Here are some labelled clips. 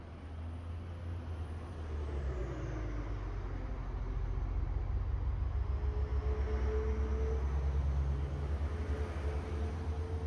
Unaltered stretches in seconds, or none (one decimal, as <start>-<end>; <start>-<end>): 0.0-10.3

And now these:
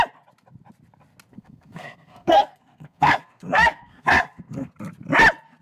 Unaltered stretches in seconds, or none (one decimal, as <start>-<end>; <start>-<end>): 0.0-1.3; 4.7-5.6

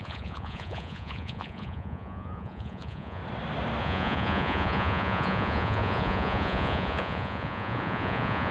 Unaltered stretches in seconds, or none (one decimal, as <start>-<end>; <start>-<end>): 3.2-3.8